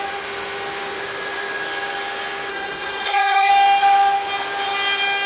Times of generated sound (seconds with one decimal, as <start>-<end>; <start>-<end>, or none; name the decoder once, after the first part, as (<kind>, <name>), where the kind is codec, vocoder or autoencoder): 2.5-3.5 (codec, SNAC)